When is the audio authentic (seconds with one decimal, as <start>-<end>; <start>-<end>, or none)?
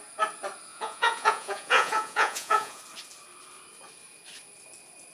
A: 0.0-0.7; 2.8-5.1